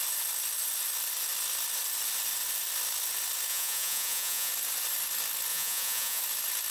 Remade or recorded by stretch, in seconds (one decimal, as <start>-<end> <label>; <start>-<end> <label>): 0.0-3.5 recorded; 3.5-4.5 remade; 4.5-5.5 recorded; 5.5-6.2 remade; 6.2-6.7 recorded

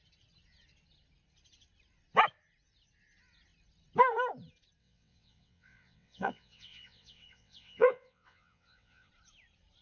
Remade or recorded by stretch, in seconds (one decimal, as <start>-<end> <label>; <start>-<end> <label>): 0.0-4.8 recorded; 4.8-9.1 remade; 9.1-9.8 recorded

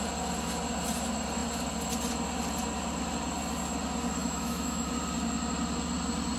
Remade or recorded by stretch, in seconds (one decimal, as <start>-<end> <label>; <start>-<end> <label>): 0.0-4.2 recorded; 4.2-4.9 remade; 4.9-6.4 recorded

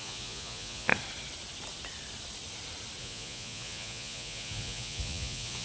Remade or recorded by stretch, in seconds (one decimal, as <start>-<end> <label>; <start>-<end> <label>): 0.0-0.9 remade; 0.9-3.0 recorded; 3.0-5.6 remade

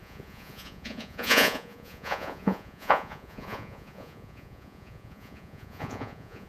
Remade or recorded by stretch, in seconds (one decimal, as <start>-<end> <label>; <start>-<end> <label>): 0.0-6.5 remade

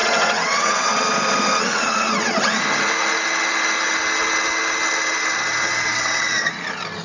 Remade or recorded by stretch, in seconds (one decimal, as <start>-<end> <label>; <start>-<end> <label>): 0.0-1.1 remade; 1.1-1.5 recorded; 1.5-2.6 remade; 2.6-5.9 recorded; 5.9-6.5 remade; 6.5-7.0 recorded